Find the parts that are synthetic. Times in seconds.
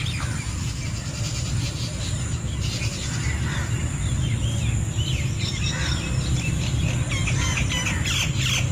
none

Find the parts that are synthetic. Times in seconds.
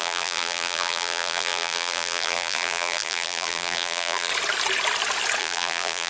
0.0-4.3 (vocoder, BigVGAN v2); 5.4-6.1